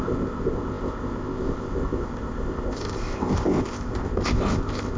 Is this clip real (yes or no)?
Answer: no